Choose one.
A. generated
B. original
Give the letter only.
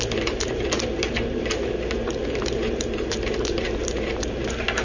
A